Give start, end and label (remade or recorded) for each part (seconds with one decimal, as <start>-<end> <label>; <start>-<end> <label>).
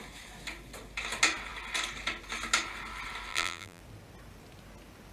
0.0-3.3 recorded; 3.3-3.8 remade; 3.8-5.1 recorded